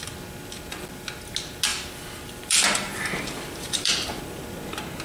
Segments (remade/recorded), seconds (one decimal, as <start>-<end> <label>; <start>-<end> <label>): 0.0-1.7 recorded; 1.7-4.2 remade; 4.2-5.0 recorded